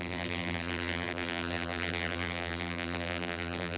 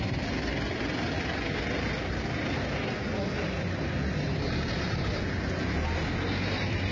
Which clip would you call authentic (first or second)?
second